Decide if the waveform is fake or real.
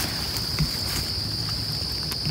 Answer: real